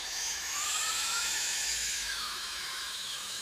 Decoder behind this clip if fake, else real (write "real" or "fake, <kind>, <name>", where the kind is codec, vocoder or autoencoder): fake, autoencoder, DAC-VAE